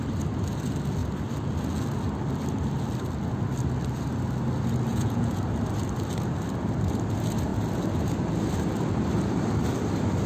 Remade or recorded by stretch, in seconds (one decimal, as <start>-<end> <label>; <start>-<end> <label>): 0.0-4.9 recorded; 4.9-5.4 remade; 5.4-10.3 recorded